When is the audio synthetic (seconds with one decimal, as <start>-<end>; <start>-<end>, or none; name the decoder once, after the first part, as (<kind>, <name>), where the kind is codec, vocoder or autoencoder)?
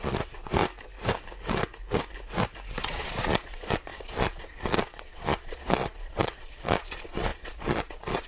0.0-0.6 (vocoder, Vocos); 2.8-8.3